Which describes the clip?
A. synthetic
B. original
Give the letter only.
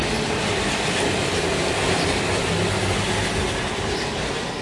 B